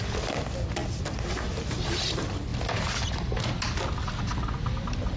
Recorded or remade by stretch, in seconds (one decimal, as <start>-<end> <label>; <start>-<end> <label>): 0.0-2.5 recorded; 2.5-3.4 remade; 3.4-5.2 recorded